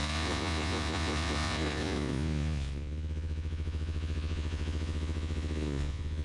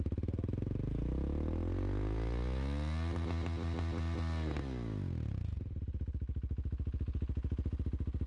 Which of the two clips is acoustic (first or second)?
second